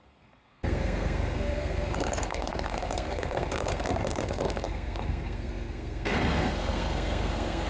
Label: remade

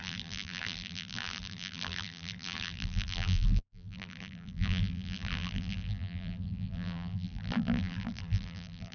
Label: remade